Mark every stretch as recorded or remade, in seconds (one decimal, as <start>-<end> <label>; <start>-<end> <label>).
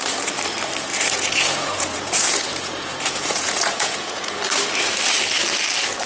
0.0-0.9 recorded; 0.9-4.4 remade; 4.4-6.1 recorded